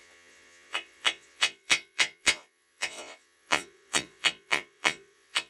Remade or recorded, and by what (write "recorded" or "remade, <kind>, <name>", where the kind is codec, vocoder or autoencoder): remade, vocoder, Vocos